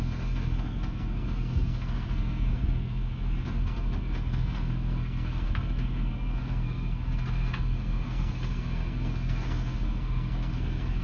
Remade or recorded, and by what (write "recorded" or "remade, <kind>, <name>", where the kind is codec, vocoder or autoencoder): remade, codec, SNAC